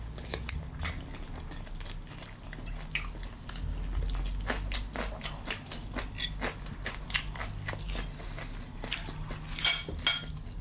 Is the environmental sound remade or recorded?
recorded